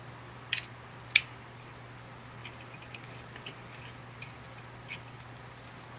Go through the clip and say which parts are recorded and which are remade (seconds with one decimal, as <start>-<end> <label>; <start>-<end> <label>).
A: 0.0-6.0 recorded